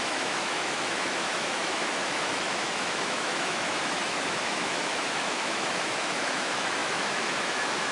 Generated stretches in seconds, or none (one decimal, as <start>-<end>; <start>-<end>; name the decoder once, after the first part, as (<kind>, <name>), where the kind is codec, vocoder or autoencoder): 0.0-7.9 (autoencoder, DAC-VAE)